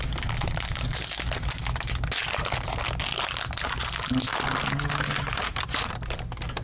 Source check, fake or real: real